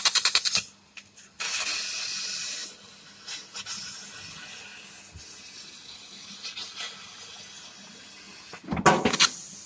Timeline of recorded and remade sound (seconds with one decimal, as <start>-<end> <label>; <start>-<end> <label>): 0.0-9.7 recorded